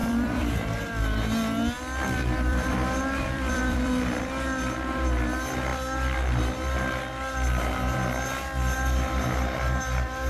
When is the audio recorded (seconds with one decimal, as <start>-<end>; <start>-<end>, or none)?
0.5-2.2; 4.2-10.3